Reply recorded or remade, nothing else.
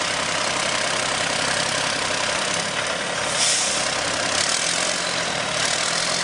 recorded